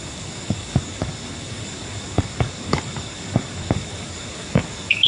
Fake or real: fake